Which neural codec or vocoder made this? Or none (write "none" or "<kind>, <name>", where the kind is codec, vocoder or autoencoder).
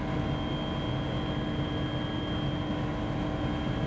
none